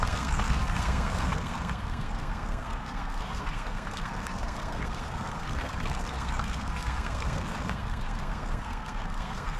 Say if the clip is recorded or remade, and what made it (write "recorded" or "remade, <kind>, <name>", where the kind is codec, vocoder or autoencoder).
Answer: remade, codec, SNAC